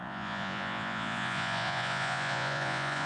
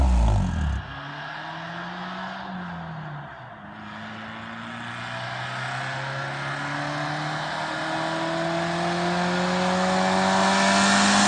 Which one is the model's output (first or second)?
first